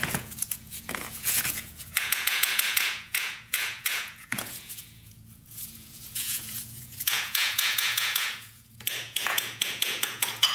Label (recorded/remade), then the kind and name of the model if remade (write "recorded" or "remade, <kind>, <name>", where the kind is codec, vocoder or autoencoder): remade, vocoder, Vocos